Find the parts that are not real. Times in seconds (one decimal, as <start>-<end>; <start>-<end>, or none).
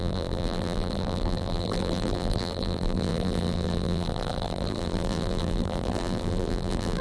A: 0.0-7.0